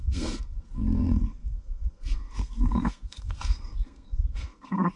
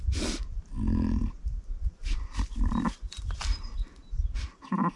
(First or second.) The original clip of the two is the second